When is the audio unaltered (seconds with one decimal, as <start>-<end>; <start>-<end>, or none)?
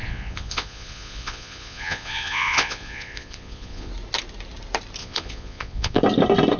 3.9-5.0; 6.0-6.6